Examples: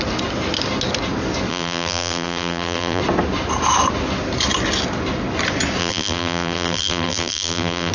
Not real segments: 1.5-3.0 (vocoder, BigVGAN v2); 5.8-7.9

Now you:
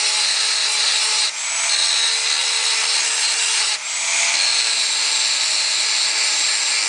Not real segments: none

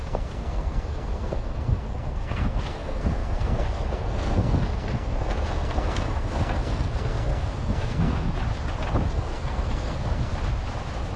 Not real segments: 0.0-8.3 (codec, SNAC); 9.1-10.3